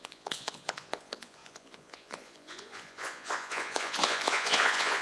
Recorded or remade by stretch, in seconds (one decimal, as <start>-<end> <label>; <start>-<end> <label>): 0.0-5.0 remade